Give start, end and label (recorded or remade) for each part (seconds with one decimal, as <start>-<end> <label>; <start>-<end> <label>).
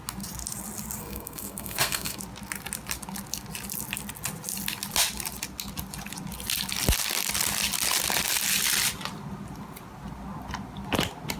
0.0-1.0 recorded; 1.0-2.2 remade; 2.2-11.4 recorded